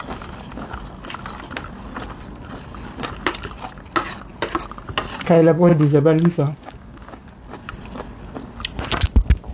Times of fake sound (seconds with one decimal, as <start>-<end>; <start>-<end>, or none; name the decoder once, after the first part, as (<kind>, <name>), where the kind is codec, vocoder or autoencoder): 5.7-7.3 (codec, DAC)